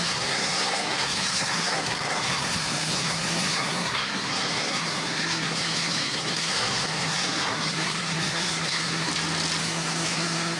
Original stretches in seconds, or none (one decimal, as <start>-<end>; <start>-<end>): 9.1-9.6